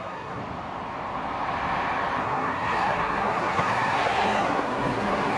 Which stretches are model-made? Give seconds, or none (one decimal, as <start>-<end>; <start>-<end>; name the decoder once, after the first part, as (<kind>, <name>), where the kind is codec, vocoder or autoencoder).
0.0-0.4 (codec, SNAC); 2.2-5.4